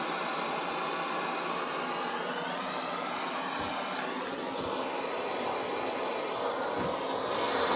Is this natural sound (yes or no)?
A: yes